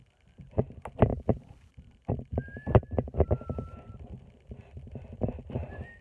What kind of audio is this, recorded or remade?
recorded